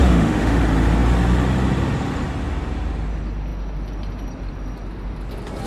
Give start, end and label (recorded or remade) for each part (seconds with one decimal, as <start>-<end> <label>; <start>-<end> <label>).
0.0-0.6 remade; 0.6-5.7 recorded